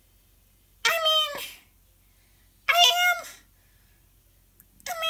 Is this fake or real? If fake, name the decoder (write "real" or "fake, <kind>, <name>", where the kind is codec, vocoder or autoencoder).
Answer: real